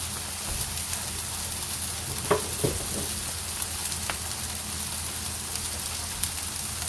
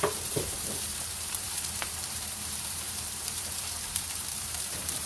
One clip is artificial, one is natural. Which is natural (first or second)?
first